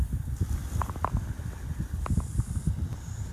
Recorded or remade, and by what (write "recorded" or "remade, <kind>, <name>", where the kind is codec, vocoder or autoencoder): remade, vocoder, BigVGAN v2